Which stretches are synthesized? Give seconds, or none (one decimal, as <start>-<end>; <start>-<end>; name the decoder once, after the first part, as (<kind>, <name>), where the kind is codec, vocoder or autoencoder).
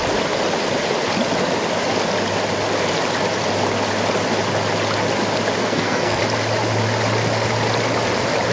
5.6-6.2 (codec, SNAC)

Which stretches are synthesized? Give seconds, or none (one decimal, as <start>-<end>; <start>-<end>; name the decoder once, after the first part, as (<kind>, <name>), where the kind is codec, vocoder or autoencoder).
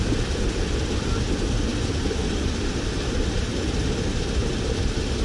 none